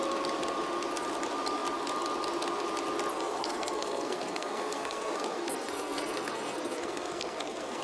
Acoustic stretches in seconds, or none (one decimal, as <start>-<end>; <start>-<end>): 0.0-3.1